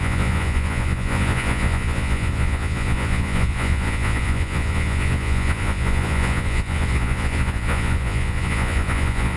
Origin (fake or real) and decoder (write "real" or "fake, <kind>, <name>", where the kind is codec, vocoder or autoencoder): fake, vocoder, Vocos